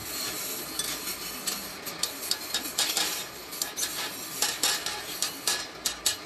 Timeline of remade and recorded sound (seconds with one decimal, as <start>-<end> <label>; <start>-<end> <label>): 0.0-6.3 recorded